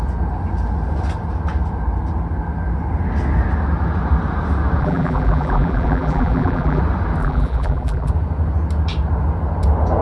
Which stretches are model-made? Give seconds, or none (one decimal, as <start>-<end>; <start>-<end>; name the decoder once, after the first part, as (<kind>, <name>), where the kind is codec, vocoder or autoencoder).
4.8-6.8 (vocoder, BigVGAN v2); 7.2-8.1